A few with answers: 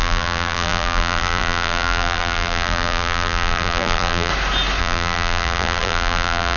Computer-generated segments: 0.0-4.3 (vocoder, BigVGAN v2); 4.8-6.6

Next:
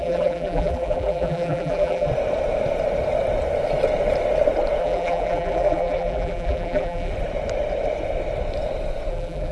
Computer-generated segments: 0.0-2.1 (vocoder, BigVGAN v2); 4.8-7.1; 9.1-9.5

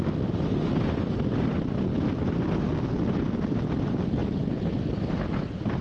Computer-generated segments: 4.2-5.1 (vocoder, BigVGAN v2)

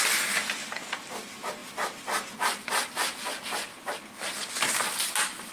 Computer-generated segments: none

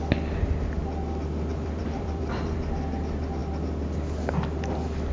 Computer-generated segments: 1.5-2.6 (vocoder, BigVGAN v2)

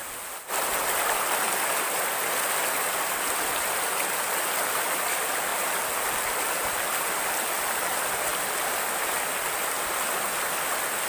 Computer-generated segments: 5.5-8.0 (vocoder, BigVGAN v2)

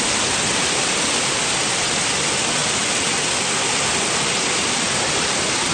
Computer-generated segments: none